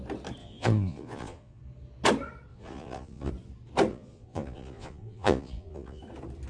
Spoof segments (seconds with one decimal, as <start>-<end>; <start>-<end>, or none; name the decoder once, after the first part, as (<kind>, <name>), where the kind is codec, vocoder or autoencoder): 0.4-1.6 (vocoder, Vocos); 2.5-3.3; 3.9-6.0